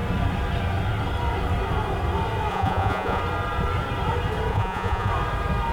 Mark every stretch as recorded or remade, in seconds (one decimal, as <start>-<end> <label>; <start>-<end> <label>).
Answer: 0.0-2.5 recorded; 2.5-3.2 remade; 3.2-4.5 recorded; 4.5-5.1 remade; 5.1-5.7 recorded